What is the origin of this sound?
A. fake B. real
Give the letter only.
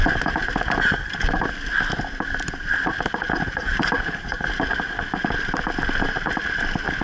B